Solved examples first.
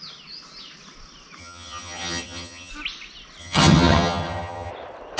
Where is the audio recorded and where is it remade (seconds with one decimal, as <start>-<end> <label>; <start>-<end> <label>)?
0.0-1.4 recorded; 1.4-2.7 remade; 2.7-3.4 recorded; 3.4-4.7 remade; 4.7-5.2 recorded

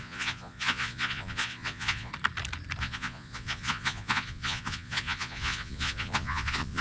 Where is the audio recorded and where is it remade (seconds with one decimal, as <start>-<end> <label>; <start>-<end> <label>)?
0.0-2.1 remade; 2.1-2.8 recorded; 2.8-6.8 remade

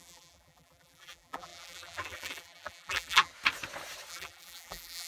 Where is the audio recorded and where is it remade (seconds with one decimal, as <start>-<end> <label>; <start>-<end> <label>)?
0.0-3.3 remade; 3.3-4.1 recorded; 4.1-5.1 remade

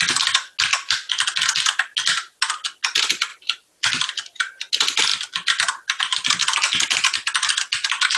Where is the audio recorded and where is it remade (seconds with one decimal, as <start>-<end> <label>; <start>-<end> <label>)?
0.0-3.3 recorded; 3.3-4.4 remade; 4.4-8.2 recorded

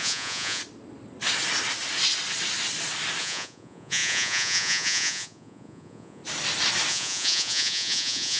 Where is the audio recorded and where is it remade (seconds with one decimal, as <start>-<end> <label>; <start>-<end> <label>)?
0.0-0.6 remade; 0.6-3.2 recorded; 3.2-6.2 remade; 6.2-6.9 recorded; 6.9-8.4 remade

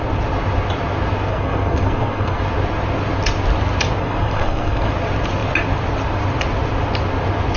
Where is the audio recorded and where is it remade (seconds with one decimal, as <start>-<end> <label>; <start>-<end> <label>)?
0.0-1.3 recorded; 1.3-2.4 remade; 2.4-4.0 recorded; 4.0-4.9 remade; 4.9-7.6 recorded

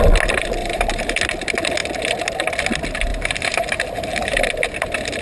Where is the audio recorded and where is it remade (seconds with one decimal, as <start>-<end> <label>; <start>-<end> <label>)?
0.0-0.6 recorded; 0.6-1.2 remade; 1.2-3.1 recorded; 3.1-4.5 remade; 4.5-5.2 recorded